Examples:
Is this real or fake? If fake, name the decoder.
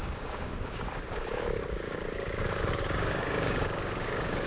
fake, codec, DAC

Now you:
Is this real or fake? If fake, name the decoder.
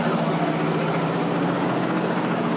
fake, codec, DAC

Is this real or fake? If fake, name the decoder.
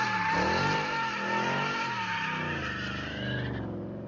real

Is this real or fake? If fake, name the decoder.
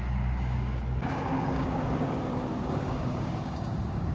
fake, codec, DAC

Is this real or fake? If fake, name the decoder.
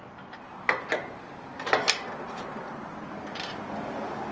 real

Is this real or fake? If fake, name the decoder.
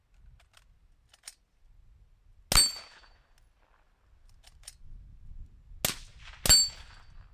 real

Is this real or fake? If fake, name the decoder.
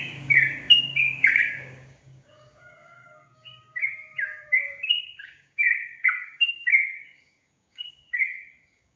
fake, codec, DAC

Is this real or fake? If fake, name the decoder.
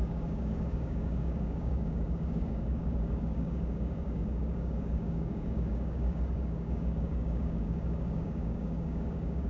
fake, codec, DAC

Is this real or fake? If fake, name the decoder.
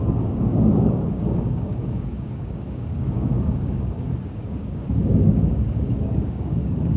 fake, codec, DAC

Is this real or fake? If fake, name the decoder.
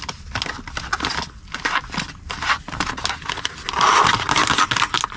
real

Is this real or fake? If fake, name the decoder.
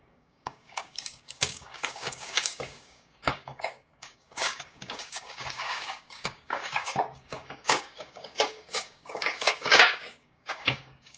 fake, codec, DAC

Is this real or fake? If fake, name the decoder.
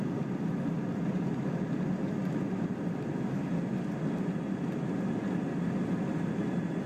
real